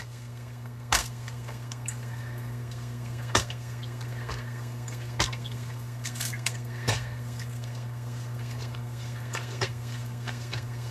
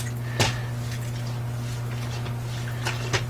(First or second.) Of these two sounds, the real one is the second